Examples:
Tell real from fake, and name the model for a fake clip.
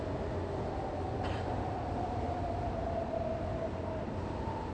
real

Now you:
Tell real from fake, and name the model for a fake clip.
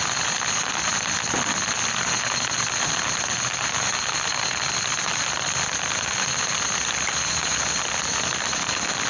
real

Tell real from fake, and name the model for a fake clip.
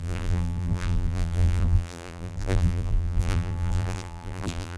fake, vocoder, BigVGAN v2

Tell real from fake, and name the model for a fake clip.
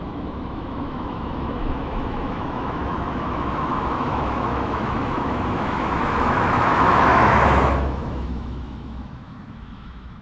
fake, autoencoder, DAC-VAE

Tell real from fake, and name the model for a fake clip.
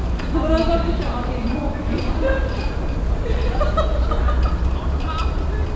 real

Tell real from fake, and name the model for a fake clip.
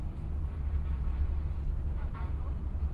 real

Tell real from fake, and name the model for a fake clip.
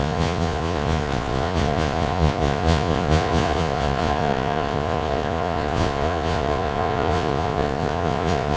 fake, vocoder, Vocos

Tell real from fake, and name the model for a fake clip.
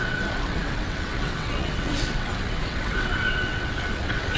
fake, vocoder, WaveNeXt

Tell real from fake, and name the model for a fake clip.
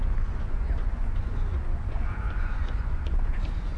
fake, vocoder, Vocos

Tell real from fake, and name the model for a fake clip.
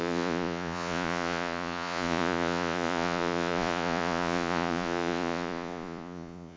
fake, vocoder, Vocos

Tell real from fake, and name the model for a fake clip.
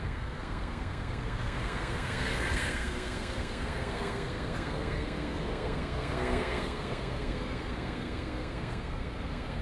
fake, codec, SNAC